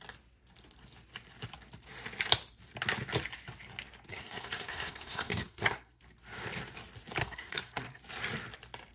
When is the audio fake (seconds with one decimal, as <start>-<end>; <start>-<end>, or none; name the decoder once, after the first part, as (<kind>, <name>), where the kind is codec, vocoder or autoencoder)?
4.1-6.0 (codec, SNAC); 7.2-8.0